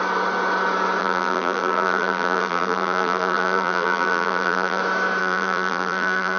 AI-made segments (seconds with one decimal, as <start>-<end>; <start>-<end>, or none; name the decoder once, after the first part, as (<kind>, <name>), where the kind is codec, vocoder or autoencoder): 1.0-4.8 (vocoder, BigVGAN v2); 5.2-6.4

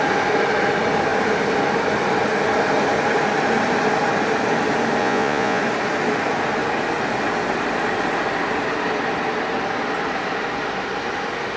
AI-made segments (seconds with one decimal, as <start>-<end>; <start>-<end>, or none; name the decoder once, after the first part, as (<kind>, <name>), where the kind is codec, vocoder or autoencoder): 5.0-5.6 (vocoder, Vocos)

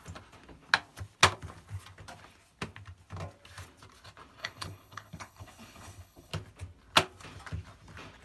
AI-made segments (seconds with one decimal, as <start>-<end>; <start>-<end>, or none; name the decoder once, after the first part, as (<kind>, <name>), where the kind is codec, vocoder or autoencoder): 4.4-6.3 (codec, HILCodec)

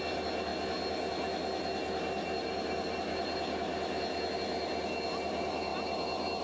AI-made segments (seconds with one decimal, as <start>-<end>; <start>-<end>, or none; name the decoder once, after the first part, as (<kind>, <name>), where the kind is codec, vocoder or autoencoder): none